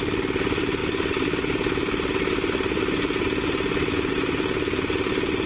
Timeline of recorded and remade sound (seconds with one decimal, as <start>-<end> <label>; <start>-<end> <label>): 0.0-0.8 recorded; 0.8-4.1 remade; 4.1-5.5 recorded